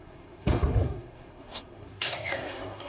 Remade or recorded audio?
remade